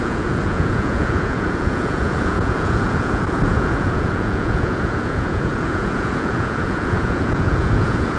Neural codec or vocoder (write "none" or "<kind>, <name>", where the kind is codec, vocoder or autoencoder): vocoder, Vocos